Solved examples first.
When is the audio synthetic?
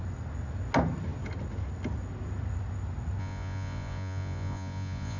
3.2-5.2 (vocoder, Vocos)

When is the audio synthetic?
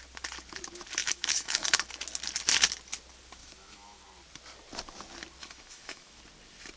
1.0-1.8 (autoencoder, DAC-VAE); 3.4-4.0; 5.4-6.2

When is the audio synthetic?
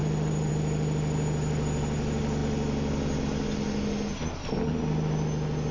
none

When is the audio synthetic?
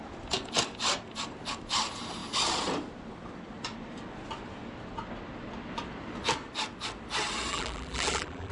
7.5-8.5 (vocoder, BigVGAN v2)